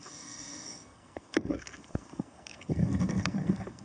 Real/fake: fake